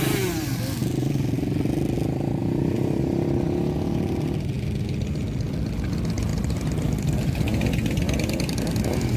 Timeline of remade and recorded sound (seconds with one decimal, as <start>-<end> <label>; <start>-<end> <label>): 0.0-9.2 recorded